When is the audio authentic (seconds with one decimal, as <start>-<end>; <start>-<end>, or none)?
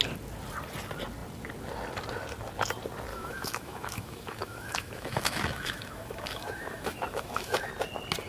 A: 0.0-3.1; 7.7-8.3